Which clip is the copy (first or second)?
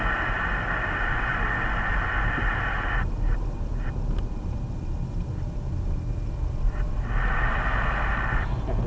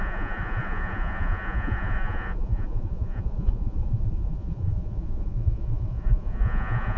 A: second